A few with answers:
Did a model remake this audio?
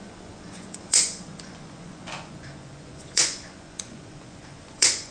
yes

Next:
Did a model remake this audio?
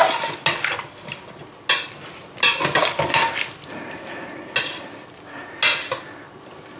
no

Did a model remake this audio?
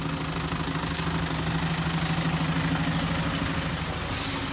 no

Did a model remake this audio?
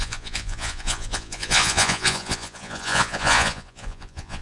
yes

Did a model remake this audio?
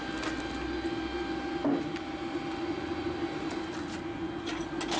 no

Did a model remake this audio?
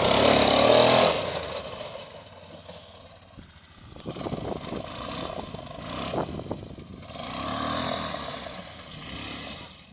no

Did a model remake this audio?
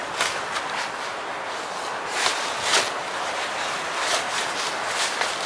no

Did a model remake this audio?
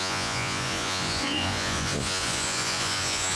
yes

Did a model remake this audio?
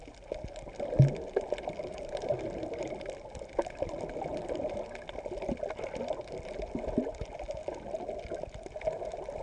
no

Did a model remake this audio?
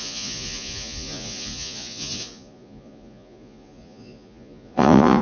yes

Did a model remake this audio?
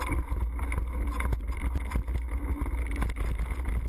no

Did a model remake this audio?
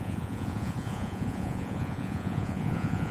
yes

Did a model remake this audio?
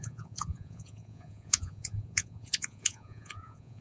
yes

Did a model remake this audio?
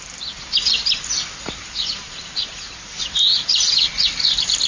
no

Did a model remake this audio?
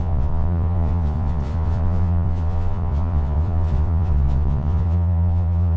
yes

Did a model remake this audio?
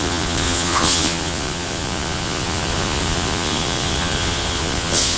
yes